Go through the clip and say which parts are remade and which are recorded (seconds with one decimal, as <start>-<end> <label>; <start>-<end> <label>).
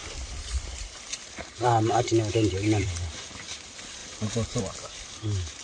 0.0-3.4 remade; 3.4-4.0 recorded; 4.0-4.6 remade; 4.6-5.6 recorded